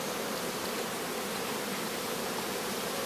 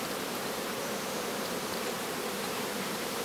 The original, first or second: first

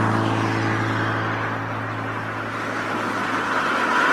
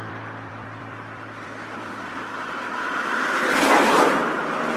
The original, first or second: first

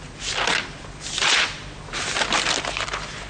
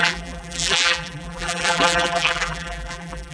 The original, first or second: first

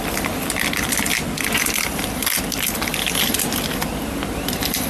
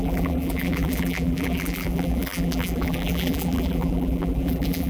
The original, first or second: first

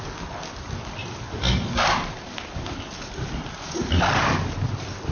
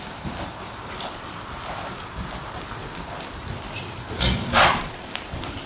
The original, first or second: first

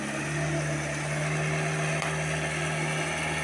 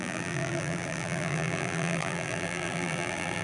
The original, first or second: first